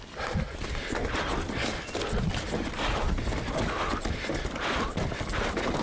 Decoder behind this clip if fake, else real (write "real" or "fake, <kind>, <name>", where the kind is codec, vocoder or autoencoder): real